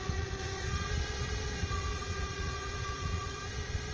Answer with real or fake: fake